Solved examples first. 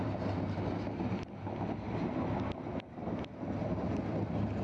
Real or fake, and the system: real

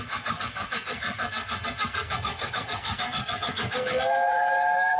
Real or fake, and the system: fake, codec, SNAC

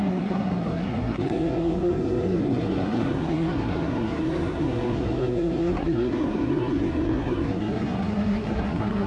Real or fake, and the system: fake, codec, SNAC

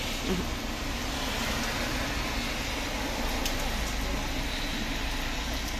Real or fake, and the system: real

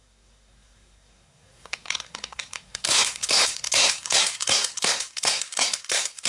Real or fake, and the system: fake, codec, SNAC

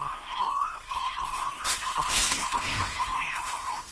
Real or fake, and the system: fake, codec, SNAC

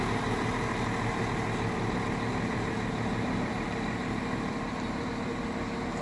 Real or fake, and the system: real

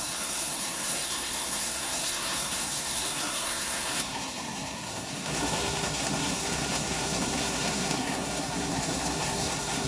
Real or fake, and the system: fake, codec, SNAC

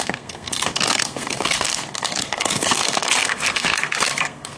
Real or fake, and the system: fake, codec, SNAC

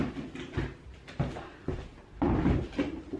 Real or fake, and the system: real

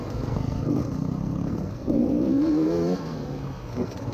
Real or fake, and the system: fake, codec, SNAC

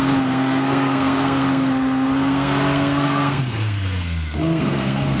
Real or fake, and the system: fake, codec, SNAC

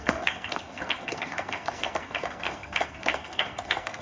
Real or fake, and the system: fake, codec, SNAC